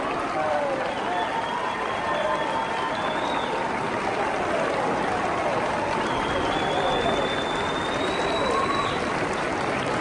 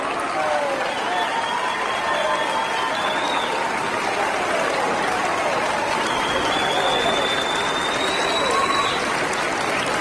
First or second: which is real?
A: second